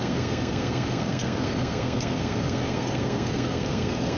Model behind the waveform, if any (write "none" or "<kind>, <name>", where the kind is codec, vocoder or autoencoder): codec, SNAC